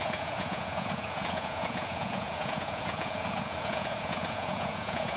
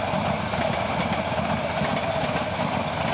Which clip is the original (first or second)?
second